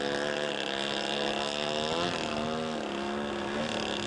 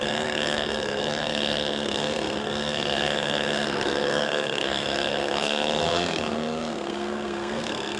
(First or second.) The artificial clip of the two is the second